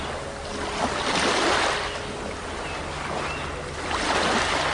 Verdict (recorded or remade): recorded